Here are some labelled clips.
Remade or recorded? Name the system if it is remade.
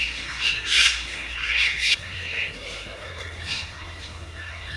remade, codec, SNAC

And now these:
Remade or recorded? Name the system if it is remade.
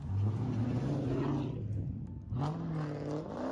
recorded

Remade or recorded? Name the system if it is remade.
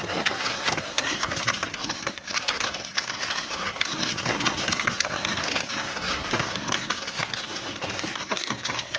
remade, codec, SNAC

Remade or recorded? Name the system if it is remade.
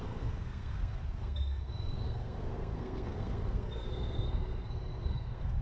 remade, codec, SNAC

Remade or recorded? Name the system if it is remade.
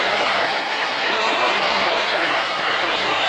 remade, codec, SNAC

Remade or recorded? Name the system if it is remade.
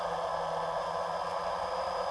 recorded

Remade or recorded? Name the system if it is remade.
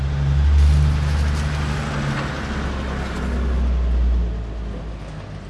recorded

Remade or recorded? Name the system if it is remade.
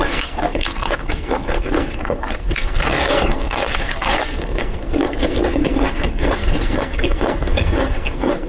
remade, codec, SNAC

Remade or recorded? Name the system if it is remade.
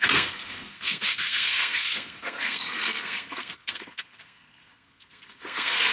remade, codec, SNAC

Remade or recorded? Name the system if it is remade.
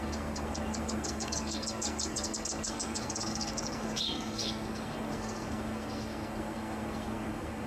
remade, codec, SNAC